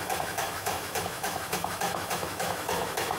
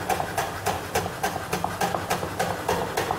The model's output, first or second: first